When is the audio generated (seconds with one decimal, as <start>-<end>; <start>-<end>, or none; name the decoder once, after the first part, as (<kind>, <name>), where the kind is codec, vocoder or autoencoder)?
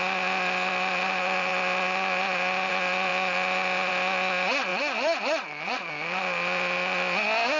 4.7-5.9 (vocoder, Vocos)